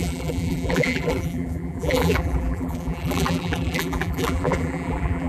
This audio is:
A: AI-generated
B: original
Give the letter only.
A